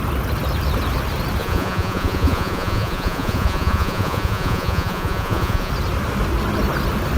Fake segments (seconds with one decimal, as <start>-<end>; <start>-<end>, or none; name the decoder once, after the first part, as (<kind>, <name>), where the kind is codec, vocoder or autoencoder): 1.4-5.7 (vocoder, Vocos)